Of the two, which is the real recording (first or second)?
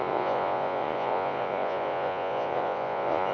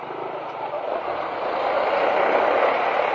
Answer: second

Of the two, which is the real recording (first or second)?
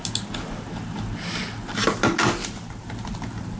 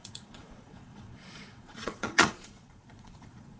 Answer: first